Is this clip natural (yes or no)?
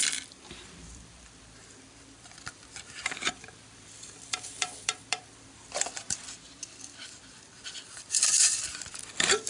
no